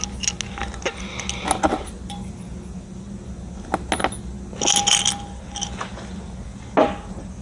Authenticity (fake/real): real